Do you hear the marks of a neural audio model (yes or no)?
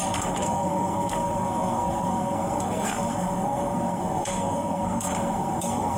yes